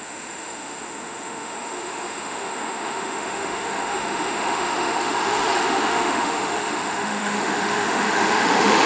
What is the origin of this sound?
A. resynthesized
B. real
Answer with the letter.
A